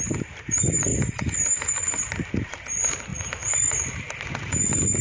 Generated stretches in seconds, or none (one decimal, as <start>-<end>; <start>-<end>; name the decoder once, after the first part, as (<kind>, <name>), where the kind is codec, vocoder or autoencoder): none